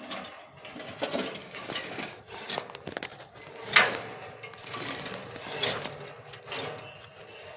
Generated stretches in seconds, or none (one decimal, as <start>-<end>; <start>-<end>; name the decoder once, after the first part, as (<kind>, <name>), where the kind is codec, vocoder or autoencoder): 1.4-2.2 (codec, DAC)